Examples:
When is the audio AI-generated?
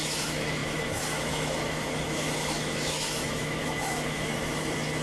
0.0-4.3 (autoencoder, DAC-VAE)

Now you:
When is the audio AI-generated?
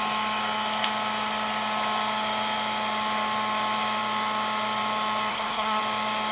5.3-5.8 (codec, SNAC)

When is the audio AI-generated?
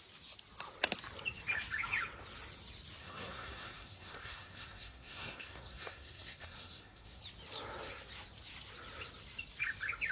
3.0-7.2 (codec, SNAC)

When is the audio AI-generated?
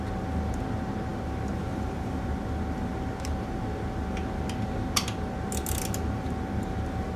none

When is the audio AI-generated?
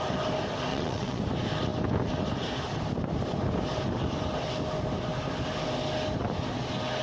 0.7-1.2 (vocoder, WaveNeXt)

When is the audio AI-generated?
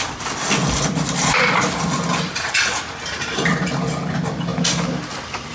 0.0-4.5 (vocoder, BigVGAN v2)